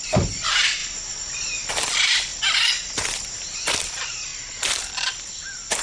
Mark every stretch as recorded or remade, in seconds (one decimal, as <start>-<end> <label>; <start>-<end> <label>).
0.0-0.8 remade; 0.8-1.7 recorded; 1.7-4.3 remade; 4.3-5.1 recorded; 5.1-5.8 remade